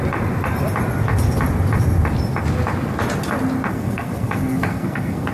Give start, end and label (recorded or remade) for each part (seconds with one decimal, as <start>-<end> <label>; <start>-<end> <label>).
0.0-3.7 recorded; 3.7-5.3 remade